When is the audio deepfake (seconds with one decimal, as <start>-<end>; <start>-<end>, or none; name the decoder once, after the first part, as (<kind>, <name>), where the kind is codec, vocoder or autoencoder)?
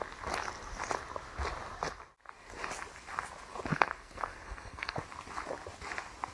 3.7-5.0 (codec, SNAC)